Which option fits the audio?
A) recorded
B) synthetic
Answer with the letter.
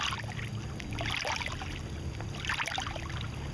A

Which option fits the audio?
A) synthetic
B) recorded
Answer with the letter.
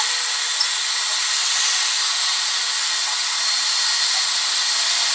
B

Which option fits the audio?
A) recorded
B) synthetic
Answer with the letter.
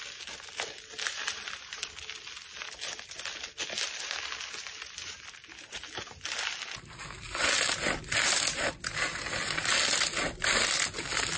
A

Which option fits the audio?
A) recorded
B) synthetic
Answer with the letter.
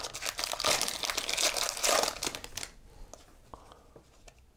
A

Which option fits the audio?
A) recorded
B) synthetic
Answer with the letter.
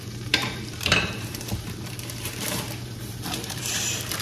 B